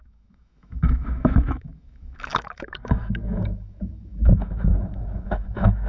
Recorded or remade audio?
remade